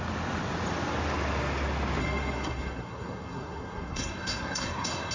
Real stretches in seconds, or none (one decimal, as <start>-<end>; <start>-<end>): 0.0-2.0